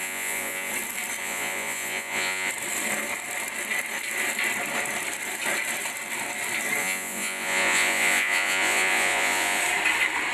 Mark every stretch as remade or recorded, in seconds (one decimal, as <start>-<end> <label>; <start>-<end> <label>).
0.0-0.7 remade; 0.7-1.2 recorded; 1.2-2.5 remade; 2.5-6.8 recorded; 6.8-9.6 remade; 9.6-10.3 recorded